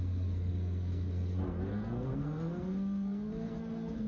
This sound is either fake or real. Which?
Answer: fake